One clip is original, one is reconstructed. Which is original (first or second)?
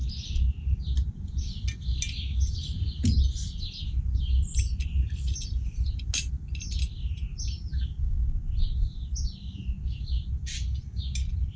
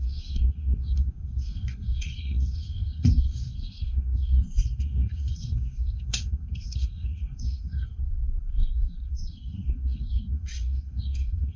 first